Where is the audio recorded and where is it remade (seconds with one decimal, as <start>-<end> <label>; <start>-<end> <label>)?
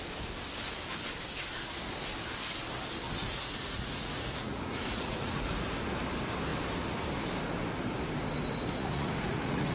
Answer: 0.0-3.2 recorded; 3.2-5.5 remade; 5.5-8.8 recorded; 8.8-9.7 remade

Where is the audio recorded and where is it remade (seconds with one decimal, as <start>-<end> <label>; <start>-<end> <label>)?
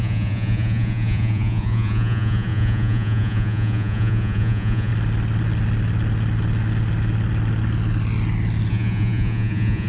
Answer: 0.0-4.9 remade; 4.9-8.7 recorded; 8.7-9.9 remade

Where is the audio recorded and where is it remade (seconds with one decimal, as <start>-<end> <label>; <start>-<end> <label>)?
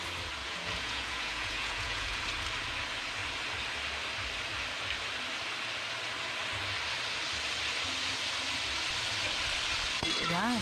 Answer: 0.0-0.4 recorded; 0.4-2.2 remade; 2.2-10.6 recorded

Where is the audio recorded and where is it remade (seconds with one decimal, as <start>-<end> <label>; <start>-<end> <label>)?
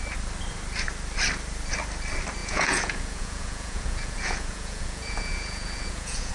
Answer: 0.0-2.4 recorded; 2.4-6.3 remade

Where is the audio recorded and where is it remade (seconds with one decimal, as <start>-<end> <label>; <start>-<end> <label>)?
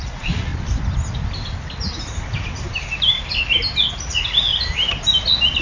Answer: 0.0-0.5 remade; 0.5-3.9 recorded; 3.9-4.5 remade; 4.5-5.6 recorded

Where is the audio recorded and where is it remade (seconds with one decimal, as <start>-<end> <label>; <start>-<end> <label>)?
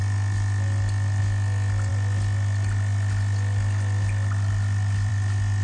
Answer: 0.0-5.6 recorded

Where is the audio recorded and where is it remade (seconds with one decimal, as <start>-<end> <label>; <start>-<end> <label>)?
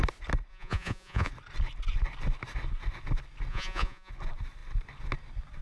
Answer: 0.0-0.5 recorded; 0.5-1.3 remade; 1.3-3.5 recorded; 3.5-4.1 remade; 4.1-5.6 recorded